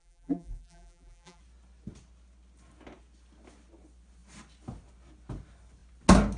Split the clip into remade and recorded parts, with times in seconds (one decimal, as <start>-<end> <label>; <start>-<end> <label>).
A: 0.0-1.4 remade; 1.4-6.4 recorded